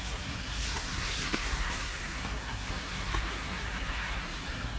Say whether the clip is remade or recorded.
remade